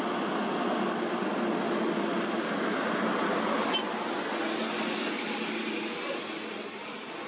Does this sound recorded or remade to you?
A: recorded